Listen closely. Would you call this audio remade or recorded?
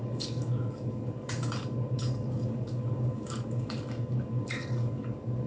remade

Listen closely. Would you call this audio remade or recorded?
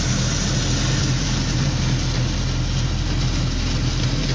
recorded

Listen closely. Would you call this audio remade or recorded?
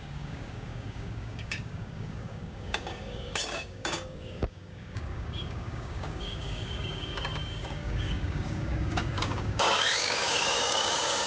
remade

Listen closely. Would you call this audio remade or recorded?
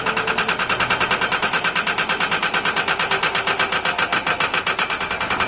recorded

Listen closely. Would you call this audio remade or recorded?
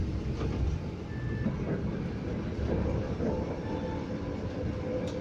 recorded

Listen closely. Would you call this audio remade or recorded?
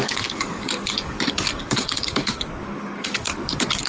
remade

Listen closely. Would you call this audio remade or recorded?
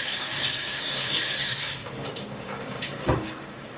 remade